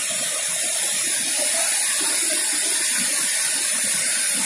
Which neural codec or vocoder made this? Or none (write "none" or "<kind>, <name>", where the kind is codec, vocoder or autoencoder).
none